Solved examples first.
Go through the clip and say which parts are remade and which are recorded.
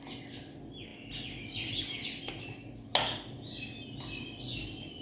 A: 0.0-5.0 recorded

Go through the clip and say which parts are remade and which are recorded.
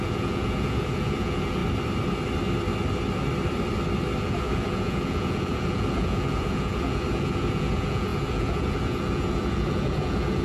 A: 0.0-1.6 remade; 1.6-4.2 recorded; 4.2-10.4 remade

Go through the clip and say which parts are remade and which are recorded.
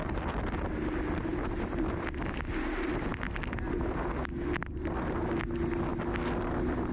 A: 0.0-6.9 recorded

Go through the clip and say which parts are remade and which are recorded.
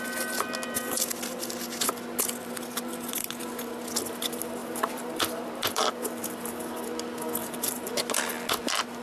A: 0.0-4.6 recorded; 4.6-6.5 remade; 6.5-7.4 recorded; 7.4-8.0 remade; 8.0-9.0 recorded